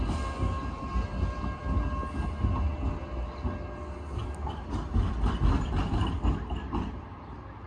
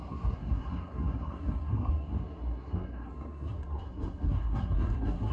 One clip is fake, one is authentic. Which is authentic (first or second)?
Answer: first